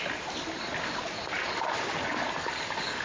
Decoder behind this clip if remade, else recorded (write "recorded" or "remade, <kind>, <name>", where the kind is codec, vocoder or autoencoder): recorded